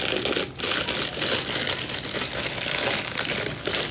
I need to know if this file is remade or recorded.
recorded